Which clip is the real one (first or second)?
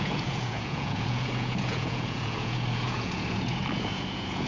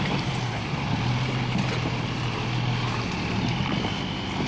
second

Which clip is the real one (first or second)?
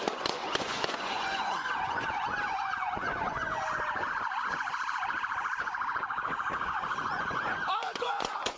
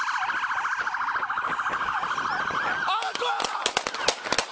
second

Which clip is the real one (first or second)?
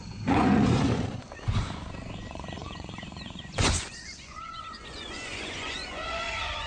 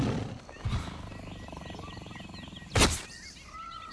second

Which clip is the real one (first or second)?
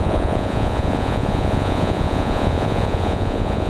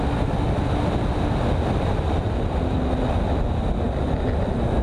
second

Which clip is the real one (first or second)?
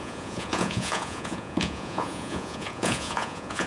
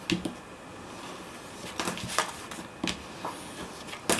second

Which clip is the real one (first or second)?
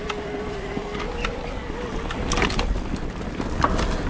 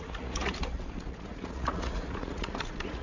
first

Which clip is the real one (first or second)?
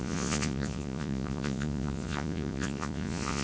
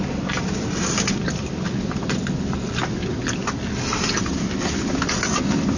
second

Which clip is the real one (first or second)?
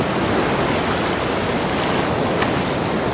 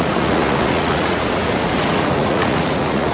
first